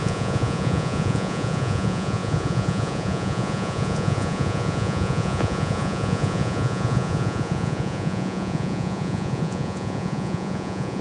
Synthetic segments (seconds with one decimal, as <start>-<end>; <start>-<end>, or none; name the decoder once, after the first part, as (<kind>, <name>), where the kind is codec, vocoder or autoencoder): 0.0-11.0 (vocoder, Vocos)